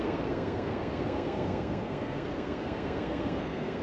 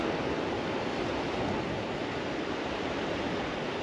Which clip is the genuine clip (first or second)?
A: second